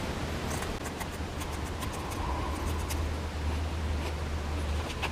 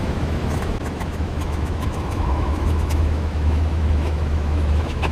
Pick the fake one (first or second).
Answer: second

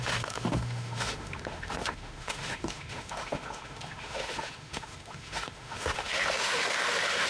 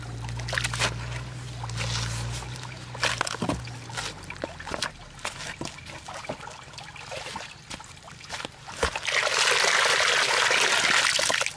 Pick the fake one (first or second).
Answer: first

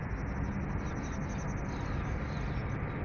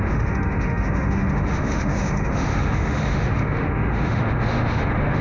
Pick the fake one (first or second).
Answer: second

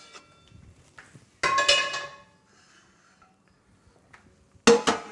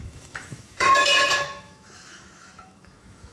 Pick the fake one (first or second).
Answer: second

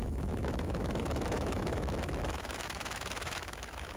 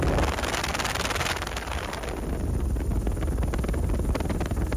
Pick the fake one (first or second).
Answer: first